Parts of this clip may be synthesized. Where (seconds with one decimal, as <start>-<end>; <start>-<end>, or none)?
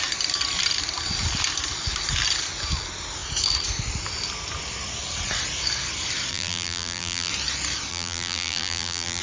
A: 6.3-7.3; 7.9-9.2